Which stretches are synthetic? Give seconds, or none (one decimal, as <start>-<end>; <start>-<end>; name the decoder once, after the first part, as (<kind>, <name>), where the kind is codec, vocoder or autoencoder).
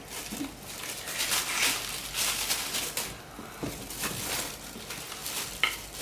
none